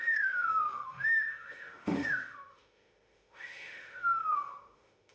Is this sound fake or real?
fake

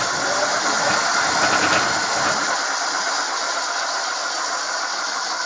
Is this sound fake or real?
real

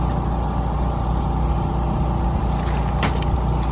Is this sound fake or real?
real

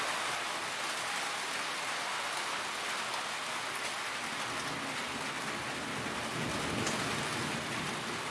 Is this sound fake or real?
real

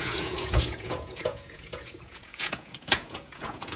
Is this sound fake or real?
fake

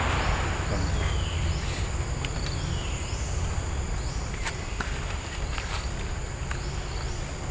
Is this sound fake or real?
real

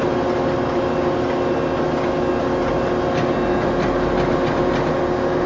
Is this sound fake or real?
real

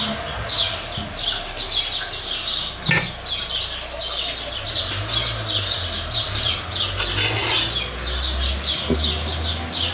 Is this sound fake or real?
real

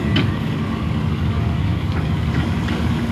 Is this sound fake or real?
fake